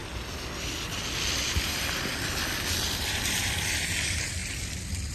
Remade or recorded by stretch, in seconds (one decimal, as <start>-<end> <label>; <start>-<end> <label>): 0.0-0.6 recorded; 0.6-2.1 remade; 2.1-2.9 recorded; 2.9-5.1 remade